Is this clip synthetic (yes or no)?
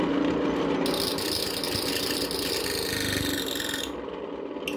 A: no